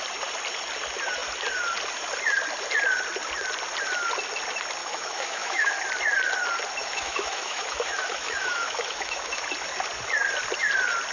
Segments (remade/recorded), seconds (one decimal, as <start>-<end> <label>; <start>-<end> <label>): 0.0-4.8 recorded; 4.8-5.7 remade; 5.7-6.8 recorded; 6.8-9.4 remade; 9.4-11.1 recorded